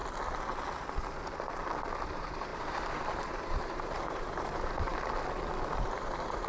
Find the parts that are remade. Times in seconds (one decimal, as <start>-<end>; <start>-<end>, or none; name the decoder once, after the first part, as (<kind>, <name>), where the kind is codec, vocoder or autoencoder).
2.1-4.9 (vocoder, BigVGAN v2); 5.6-6.5